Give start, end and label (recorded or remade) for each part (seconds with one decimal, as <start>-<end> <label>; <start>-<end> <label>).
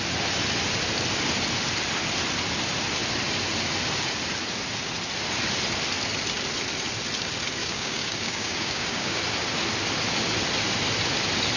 0.0-7.6 recorded; 7.6-9.2 remade; 9.2-11.6 recorded